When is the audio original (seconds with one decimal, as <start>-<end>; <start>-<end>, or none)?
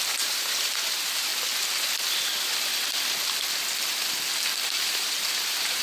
1.3-4.8